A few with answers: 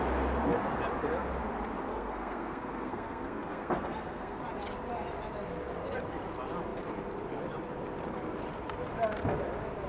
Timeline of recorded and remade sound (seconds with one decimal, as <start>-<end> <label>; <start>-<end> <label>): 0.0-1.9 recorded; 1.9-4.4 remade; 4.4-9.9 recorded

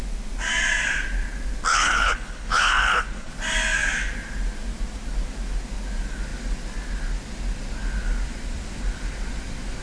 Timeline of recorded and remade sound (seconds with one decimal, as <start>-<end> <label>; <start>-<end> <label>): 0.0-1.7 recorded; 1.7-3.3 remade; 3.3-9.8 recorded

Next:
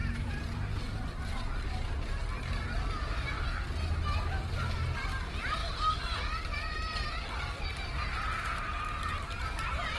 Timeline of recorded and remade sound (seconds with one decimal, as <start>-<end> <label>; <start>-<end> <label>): 0.0-10.0 recorded